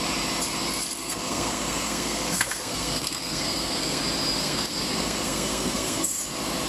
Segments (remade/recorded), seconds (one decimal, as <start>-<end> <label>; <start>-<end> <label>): 0.0-1.0 recorded; 1.0-4.0 remade; 4.0-4.4 recorded; 4.4-6.2 remade; 6.2-6.7 recorded